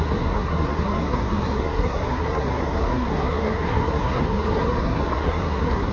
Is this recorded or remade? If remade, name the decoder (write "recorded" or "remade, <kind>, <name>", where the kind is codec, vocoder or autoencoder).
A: remade, codec, SNAC